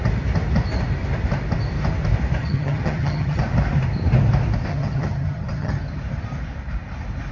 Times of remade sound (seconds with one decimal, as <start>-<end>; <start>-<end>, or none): 2.4-3.4; 4.7-5.8